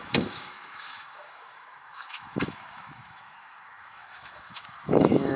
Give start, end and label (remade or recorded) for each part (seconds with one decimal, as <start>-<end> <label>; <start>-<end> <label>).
0.0-5.4 remade